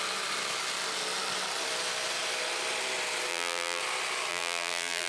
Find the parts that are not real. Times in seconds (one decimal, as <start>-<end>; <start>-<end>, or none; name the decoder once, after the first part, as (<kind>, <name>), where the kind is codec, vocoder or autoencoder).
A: 3.3-3.8 (vocoder, BigVGAN v2); 4.3-5.1